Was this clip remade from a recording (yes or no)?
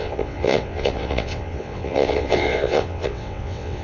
yes